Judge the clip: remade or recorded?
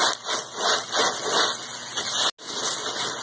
recorded